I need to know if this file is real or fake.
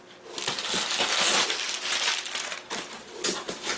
real